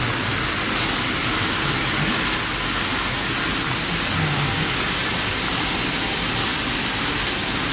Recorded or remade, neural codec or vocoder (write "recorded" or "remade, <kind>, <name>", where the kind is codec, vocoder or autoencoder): recorded